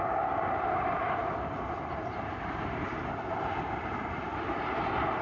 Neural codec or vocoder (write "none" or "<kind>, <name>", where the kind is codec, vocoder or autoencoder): vocoder, BigVGAN v2